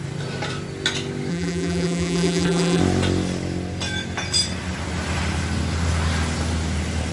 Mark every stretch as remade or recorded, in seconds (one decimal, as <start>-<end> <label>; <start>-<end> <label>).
0.0-1.3 recorded; 1.3-2.8 remade; 2.8-7.1 recorded